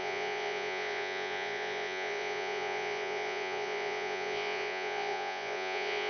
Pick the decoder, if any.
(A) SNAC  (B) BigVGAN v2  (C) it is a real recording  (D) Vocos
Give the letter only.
D